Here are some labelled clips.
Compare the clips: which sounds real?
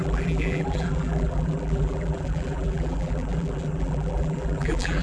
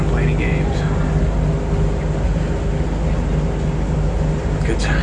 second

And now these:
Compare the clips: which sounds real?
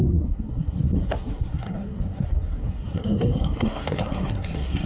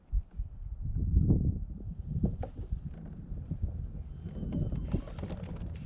second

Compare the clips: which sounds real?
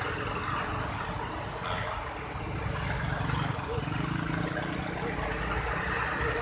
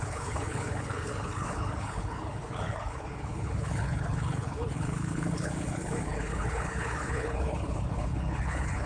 first